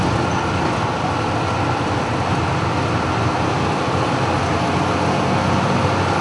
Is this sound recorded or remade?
recorded